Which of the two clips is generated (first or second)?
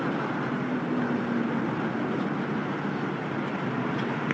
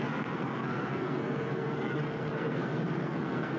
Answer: second